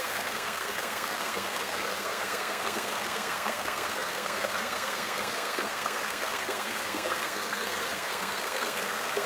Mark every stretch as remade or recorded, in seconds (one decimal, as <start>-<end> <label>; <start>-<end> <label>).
0.0-9.3 remade